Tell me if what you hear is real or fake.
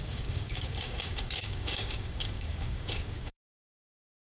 fake